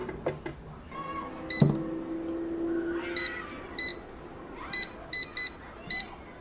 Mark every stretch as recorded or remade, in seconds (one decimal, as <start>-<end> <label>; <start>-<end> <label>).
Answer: 0.0-6.4 recorded